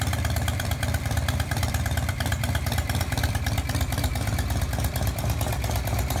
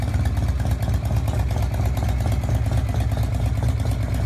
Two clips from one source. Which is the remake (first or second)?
first